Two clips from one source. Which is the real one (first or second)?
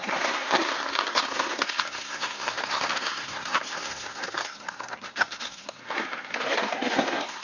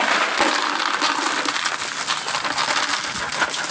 second